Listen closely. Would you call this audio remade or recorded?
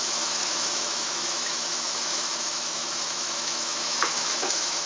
remade